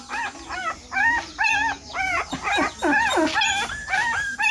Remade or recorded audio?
recorded